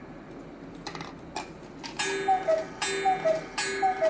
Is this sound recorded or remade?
recorded